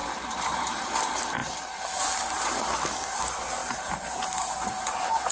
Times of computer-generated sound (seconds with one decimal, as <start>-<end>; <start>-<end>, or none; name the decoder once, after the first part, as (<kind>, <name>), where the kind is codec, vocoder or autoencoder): none